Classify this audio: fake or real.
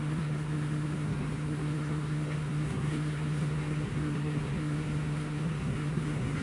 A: fake